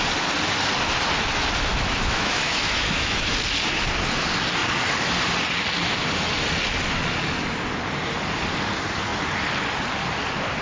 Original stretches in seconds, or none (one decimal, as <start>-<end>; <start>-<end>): 0.0-1.7; 3.3-10.6